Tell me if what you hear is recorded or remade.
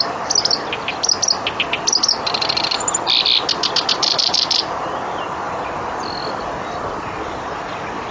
recorded